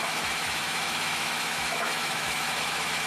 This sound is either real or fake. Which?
fake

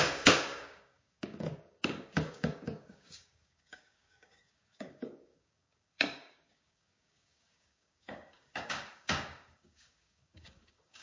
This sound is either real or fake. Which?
fake